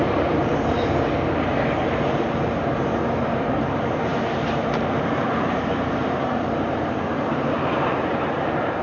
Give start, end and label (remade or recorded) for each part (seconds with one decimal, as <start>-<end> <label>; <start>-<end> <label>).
0.0-8.8 remade